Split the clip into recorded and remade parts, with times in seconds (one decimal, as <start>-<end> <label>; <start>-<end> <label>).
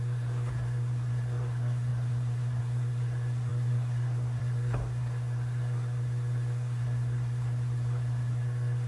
0.0-8.9 remade